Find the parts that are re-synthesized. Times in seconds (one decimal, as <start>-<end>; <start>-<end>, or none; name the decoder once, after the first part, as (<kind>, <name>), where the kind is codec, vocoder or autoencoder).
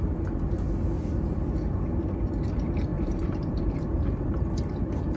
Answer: 2.9-4.4 (vocoder, BigVGAN v2)